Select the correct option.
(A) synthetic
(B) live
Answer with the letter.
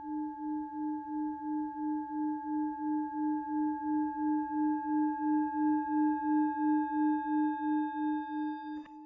B